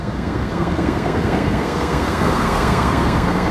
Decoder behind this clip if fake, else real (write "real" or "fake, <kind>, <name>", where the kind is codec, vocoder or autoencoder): fake, codec, SNAC